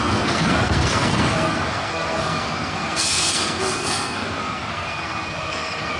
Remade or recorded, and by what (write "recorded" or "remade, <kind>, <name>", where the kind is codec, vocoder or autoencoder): remade, codec, SNAC